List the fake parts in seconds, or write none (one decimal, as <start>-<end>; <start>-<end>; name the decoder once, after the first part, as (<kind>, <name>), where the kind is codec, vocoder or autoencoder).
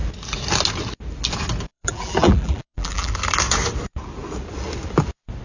1.7-3.1 (vocoder, BigVGAN v2)